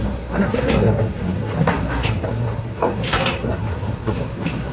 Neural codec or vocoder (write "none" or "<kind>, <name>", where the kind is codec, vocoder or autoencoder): codec, SNAC